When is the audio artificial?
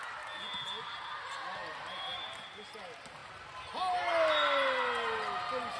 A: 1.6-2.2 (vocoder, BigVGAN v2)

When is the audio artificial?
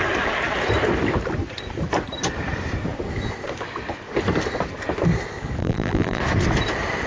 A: 5.6-6.2 (vocoder, BigVGAN v2)